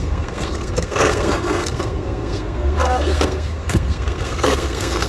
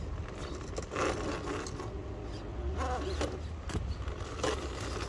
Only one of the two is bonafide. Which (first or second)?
second